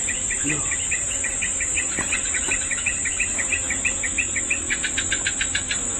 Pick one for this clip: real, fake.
real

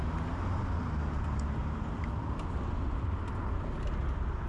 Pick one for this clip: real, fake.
real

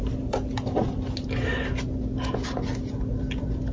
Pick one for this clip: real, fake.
real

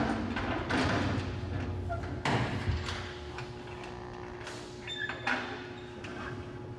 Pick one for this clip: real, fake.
real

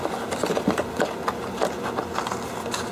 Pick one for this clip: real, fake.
real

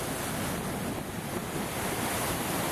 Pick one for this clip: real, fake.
real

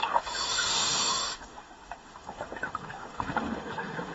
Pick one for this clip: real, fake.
fake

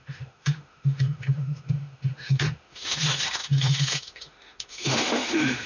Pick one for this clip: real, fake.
fake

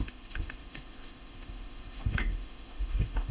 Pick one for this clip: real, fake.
fake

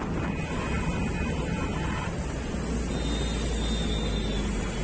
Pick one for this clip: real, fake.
real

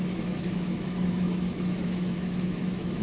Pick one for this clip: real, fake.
fake